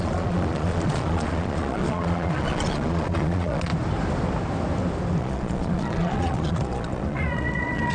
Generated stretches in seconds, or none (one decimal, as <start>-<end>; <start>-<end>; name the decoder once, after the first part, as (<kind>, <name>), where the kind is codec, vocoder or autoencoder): 0.0-3.7 (vocoder, Vocos); 5.2-7.9